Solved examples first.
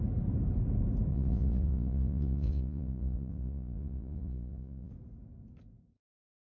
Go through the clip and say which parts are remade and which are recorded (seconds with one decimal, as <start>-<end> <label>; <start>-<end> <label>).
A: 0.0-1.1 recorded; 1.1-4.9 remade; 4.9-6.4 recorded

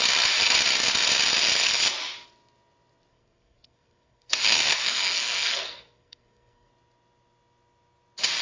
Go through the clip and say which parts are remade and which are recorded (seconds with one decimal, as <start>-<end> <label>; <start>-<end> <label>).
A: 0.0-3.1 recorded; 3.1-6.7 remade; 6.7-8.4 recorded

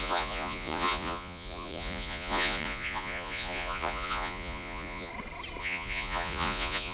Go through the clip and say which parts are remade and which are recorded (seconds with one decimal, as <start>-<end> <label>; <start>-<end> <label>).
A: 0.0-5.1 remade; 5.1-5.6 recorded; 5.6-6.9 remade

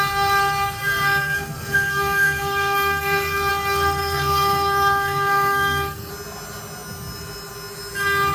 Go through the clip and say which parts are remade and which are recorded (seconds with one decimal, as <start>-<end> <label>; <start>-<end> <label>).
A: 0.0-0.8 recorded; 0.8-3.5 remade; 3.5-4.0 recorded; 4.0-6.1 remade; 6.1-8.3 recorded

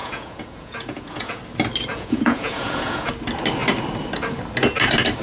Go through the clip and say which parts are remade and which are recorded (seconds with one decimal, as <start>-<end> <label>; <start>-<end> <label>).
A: 0.0-1.4 remade; 1.4-1.9 recorded; 1.9-3.1 remade; 3.1-5.2 recorded

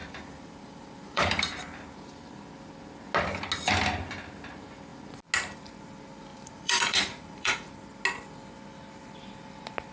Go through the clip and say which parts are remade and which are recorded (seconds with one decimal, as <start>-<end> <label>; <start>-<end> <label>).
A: 0.0-1.8 remade; 1.8-6.3 recorded; 6.3-7.7 remade; 7.7-9.9 recorded

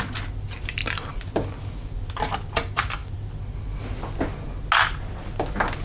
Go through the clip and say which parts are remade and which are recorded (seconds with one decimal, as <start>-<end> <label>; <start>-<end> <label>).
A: 0.0-5.8 recorded